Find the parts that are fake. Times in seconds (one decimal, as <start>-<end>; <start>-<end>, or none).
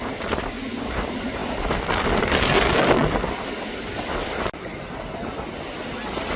none